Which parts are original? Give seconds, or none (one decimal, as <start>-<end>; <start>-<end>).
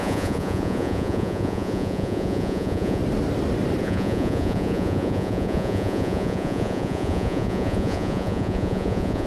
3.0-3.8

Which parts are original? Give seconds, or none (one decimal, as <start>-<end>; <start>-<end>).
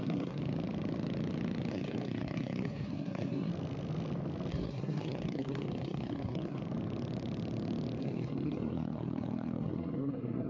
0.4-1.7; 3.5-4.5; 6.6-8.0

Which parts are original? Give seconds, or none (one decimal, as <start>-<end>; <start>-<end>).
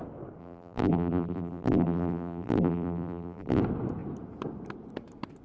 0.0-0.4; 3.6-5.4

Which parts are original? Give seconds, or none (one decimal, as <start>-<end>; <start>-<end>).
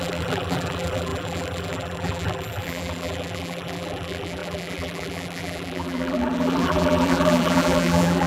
none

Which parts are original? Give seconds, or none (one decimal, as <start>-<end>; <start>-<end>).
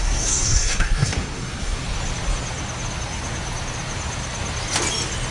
1.8-5.3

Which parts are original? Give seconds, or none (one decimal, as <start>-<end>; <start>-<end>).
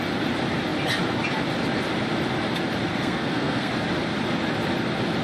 0.0-2.9; 3.7-5.2